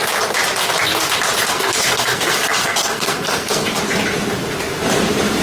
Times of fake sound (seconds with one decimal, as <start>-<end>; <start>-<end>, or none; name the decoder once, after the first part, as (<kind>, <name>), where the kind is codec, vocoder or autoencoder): 1.5-3.8 (codec, SNAC)